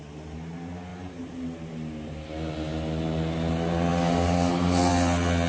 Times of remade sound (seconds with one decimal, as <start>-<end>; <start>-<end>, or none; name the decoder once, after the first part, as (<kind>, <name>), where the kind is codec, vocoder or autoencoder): none